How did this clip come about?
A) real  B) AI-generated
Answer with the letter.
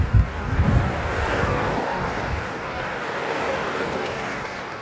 B